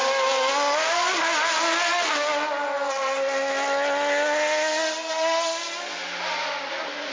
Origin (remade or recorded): recorded